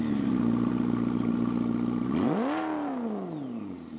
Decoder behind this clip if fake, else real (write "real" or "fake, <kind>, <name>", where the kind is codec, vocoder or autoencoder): real